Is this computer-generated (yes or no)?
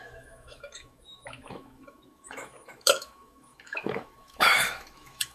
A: yes